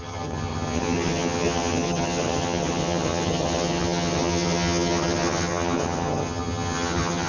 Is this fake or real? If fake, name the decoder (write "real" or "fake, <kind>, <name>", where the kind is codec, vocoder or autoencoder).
fake, vocoder, HiFi-GAN